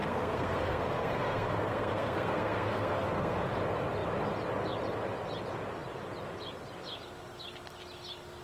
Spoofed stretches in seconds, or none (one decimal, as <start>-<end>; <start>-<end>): 0.0-3.5